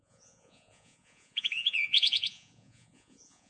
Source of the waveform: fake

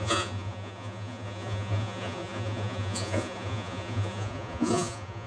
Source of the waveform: fake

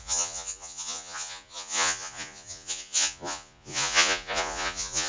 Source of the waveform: fake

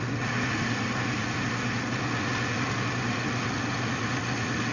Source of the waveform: real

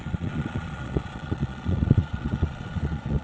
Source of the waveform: fake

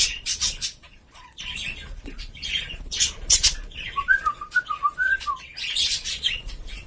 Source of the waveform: fake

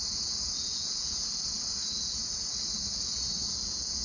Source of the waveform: fake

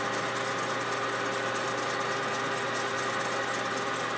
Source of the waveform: real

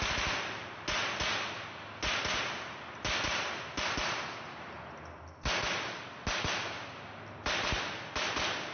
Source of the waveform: real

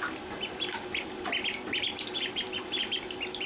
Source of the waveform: real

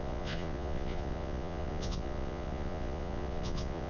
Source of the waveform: fake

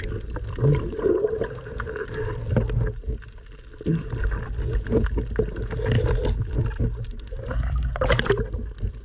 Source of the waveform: real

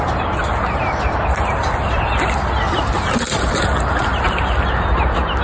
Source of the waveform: real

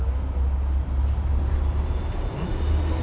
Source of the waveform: real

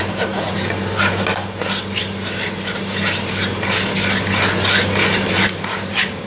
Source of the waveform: real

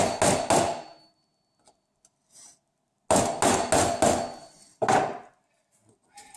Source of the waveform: real